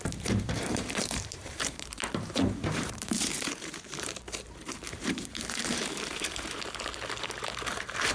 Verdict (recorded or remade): remade